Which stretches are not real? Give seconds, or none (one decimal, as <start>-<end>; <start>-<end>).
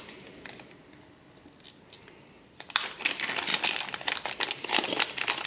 3.5-5.5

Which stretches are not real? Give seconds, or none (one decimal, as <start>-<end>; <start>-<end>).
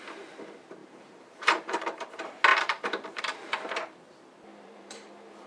0.8-2.1; 2.5-3.2; 4.5-5.1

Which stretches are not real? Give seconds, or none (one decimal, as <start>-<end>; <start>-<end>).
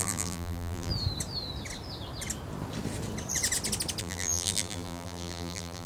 0.0-0.9; 4.0-5.9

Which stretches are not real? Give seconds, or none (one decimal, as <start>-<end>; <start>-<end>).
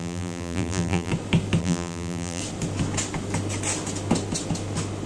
0.0-1.1; 1.6-2.4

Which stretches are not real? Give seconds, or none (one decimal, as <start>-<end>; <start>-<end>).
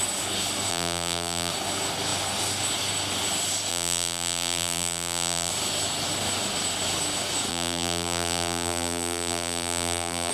0.7-1.5; 3.7-5.5; 7.5-10.3